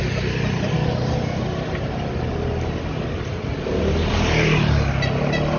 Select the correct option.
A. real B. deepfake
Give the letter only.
A